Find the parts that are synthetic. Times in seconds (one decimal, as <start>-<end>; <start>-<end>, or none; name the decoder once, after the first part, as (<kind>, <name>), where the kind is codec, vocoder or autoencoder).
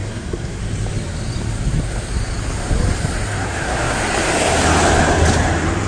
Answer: 0.0-0.6 (codec, SNAC); 3.4-4.0